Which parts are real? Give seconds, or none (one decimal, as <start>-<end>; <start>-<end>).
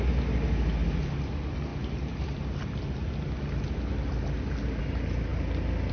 0.0-5.9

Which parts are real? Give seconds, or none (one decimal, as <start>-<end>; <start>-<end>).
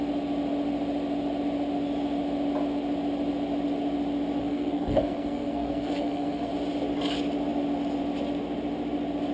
0.0-4.4; 6.5-9.3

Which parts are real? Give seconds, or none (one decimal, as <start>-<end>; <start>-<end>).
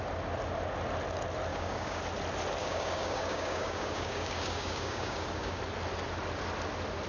0.0-1.5; 2.0-2.6; 5.6-7.1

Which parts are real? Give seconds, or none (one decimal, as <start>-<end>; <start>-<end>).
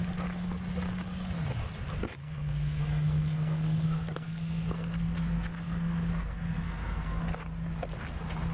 0.0-2.2; 7.2-8.5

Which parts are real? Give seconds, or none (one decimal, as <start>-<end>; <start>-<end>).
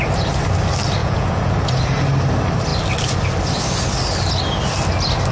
0.0-1.0; 1.5-5.3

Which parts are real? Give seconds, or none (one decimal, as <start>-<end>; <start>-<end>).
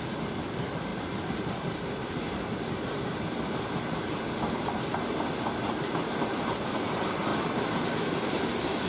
0.0-8.9